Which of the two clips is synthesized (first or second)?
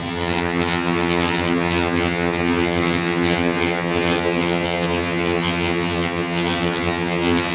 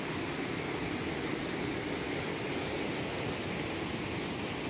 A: first